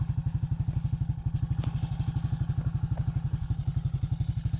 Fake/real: real